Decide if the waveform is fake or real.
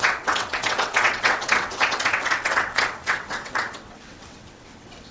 fake